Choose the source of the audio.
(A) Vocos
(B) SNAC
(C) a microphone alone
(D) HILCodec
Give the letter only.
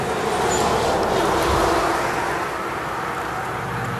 C